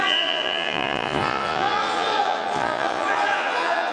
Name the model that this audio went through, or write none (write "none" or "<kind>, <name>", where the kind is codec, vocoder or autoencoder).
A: vocoder, Vocos